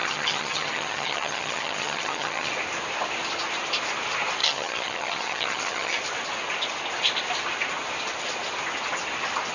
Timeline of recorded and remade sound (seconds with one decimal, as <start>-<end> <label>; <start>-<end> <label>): 0.0-2.5 remade; 2.5-4.4 recorded; 4.4-6.0 remade; 6.0-9.5 recorded